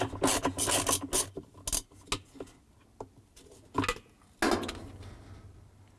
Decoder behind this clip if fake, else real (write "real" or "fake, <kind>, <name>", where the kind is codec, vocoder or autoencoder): real